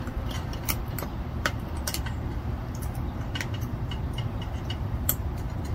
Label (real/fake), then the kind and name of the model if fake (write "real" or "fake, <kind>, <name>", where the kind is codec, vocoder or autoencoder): fake, vocoder, BigVGAN v2